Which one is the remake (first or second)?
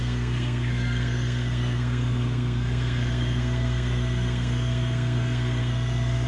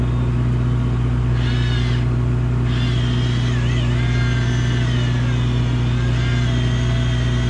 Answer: first